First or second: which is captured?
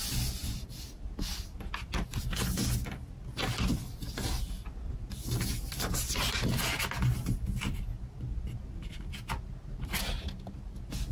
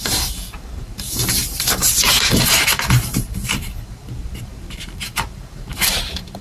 first